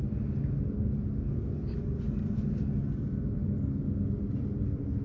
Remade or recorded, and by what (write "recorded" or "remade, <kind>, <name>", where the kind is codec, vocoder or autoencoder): recorded